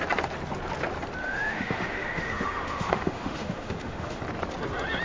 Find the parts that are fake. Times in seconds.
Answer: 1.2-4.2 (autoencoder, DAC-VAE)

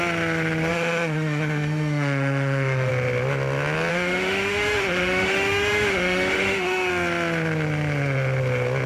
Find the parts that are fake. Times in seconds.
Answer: 0.7-2.9 (autoencoder, DAC-VAE); 3.9-6.9

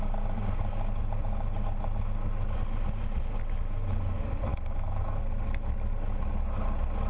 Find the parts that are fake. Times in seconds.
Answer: 4.5-5.2 (autoencoder, DAC-VAE)

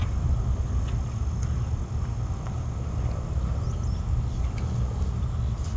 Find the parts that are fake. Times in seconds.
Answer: none

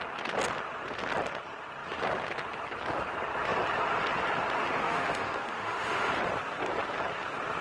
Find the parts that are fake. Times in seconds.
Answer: 4.8-6.1 (autoencoder, DAC-VAE)

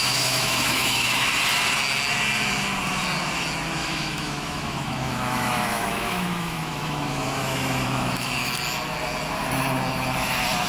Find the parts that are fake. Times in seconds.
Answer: 0.0-1.3 (autoencoder, DAC-VAE); 3.8-8.5

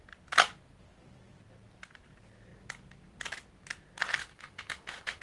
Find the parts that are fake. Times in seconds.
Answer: 4.2-5.2 (autoencoder, DAC-VAE)